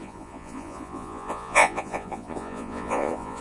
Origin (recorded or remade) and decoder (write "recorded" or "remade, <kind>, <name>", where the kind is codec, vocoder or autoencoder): remade, vocoder, Vocos